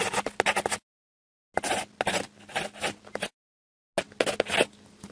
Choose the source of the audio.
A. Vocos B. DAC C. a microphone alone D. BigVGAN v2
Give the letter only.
C